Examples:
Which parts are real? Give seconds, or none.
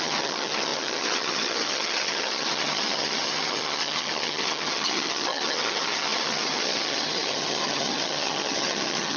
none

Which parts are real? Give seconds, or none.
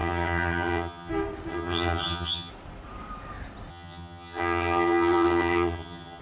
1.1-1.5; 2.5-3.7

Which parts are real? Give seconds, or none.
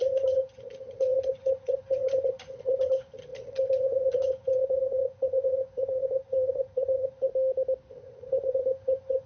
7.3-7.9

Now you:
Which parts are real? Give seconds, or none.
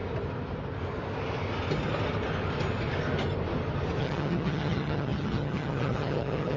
0.0-4.0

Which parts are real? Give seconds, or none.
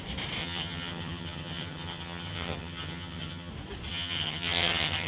0.0-0.4; 3.5-3.9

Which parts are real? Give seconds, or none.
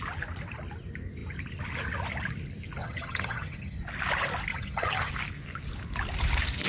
0.0-2.8; 3.8-4.5; 5.1-6.7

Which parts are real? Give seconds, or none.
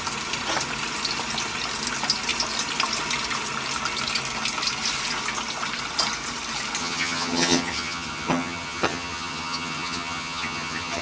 0.0-6.8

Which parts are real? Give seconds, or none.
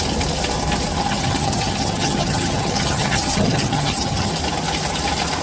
0.0-1.1; 4.3-5.4